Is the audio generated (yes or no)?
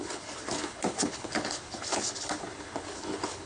yes